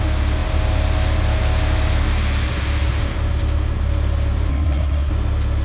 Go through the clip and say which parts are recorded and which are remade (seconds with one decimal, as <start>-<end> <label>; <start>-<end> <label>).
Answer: 0.0-4.5 recorded; 4.5-5.1 remade; 5.1-5.6 recorded